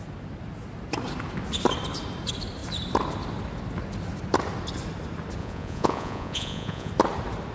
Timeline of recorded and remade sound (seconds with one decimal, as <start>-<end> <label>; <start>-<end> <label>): 0.0-5.4 recorded; 5.4-6.9 remade; 6.9-7.5 recorded